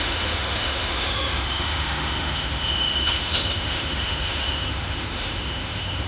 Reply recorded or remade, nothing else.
remade